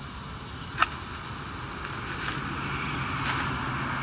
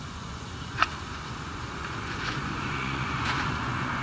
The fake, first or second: second